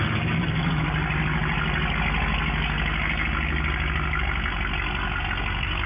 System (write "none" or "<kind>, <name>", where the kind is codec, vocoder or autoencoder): none